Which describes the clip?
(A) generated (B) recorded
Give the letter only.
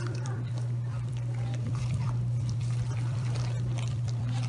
A